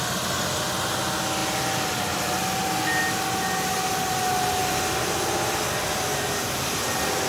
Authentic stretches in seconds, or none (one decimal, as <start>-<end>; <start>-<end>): 0.0-7.3